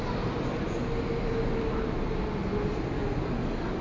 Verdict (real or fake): real